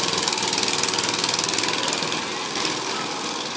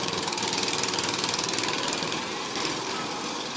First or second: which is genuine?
first